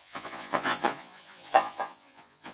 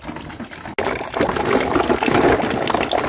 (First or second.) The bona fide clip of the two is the second